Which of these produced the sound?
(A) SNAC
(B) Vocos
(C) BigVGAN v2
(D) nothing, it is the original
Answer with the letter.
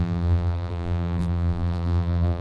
C